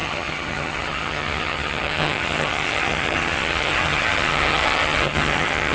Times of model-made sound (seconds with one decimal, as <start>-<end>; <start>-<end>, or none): 0.0-5.7